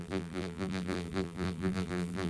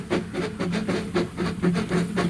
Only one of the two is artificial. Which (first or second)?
first